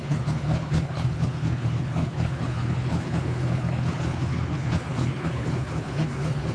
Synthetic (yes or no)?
yes